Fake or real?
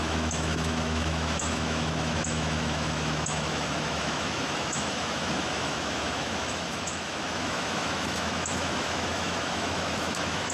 fake